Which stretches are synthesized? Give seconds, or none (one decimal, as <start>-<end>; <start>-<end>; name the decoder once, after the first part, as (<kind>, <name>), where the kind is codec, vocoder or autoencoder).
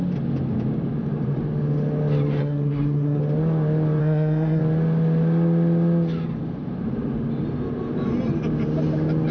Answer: 2.4-3.2 (codec, SNAC); 4.0-4.6